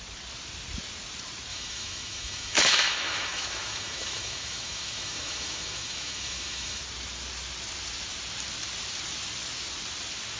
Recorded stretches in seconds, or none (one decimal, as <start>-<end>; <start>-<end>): 0.0-1.5; 6.8-10.4